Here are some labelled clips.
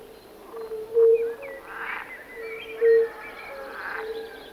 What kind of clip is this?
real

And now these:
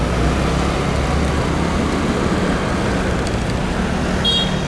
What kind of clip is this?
real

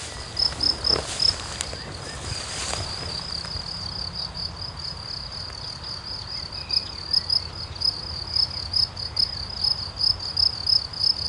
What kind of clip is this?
real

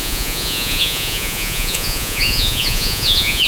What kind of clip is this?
fake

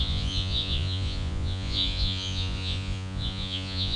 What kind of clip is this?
fake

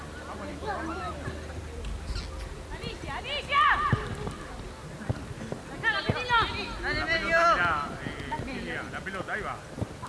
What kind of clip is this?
real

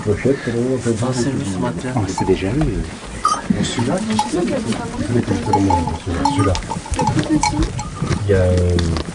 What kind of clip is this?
real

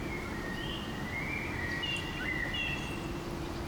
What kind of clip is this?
real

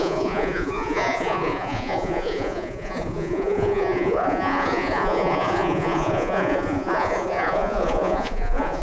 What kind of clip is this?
fake